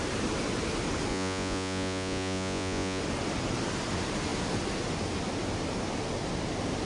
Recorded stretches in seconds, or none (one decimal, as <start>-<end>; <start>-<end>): 0.0-1.1; 3.0-6.9